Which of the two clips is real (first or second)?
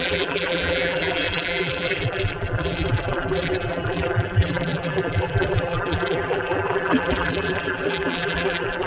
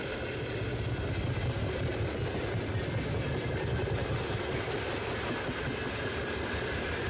second